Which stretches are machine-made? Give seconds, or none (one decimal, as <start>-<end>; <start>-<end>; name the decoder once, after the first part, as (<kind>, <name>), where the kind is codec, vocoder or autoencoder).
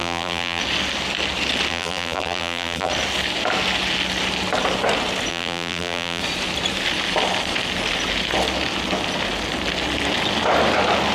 0.0-0.6 (vocoder, BigVGAN v2); 1.7-2.9; 5.3-6.2